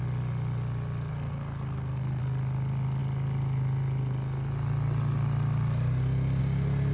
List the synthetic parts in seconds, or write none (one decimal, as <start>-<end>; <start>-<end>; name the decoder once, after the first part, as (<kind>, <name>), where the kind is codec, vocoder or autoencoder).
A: 1.1-2.2 (codec, SNAC)